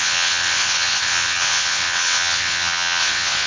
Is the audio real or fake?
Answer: fake